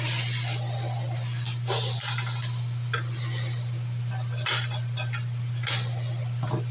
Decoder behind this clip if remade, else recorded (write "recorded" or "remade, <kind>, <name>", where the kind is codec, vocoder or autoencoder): recorded